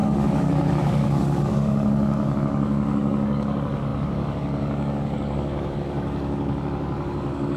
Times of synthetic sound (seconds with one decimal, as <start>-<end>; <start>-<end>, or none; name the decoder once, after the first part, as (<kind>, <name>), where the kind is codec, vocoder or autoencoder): 0.0-7.6 (codec, DAC)